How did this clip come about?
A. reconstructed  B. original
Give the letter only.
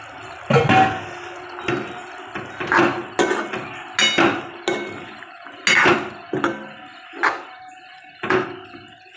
B